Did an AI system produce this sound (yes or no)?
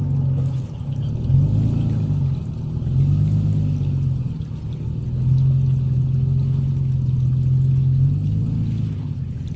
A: no